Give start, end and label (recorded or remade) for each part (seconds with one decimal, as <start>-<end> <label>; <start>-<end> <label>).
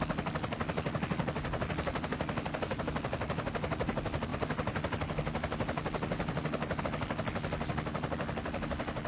0.0-9.1 recorded